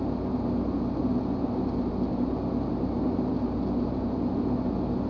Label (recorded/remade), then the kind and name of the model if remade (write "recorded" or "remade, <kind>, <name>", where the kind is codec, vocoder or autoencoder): recorded